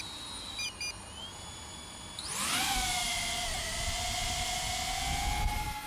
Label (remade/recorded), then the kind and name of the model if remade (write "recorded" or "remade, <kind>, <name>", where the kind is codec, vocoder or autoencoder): recorded